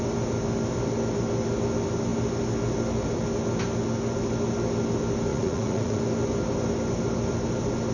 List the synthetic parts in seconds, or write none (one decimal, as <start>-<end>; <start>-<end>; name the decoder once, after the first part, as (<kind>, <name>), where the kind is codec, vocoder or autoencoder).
5.3-6.0 (vocoder, Vocos)